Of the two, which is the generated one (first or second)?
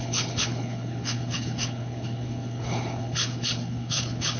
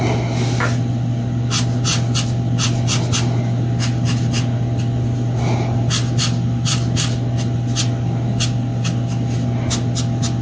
first